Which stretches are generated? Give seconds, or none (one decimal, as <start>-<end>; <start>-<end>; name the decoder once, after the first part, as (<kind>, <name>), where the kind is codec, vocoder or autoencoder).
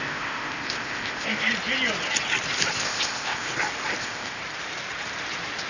0.0-1.5 (codec, ZipCodec); 2.8-3.5; 4.0-4.4